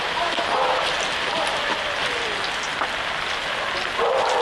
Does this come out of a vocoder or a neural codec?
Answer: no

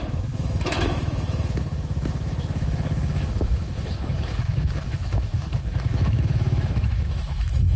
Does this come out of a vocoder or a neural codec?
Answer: yes